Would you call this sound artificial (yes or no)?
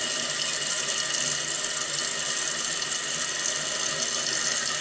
no